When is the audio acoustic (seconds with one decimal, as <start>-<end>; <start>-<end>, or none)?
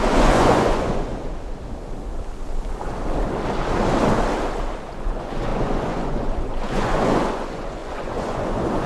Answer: 1.1-4.9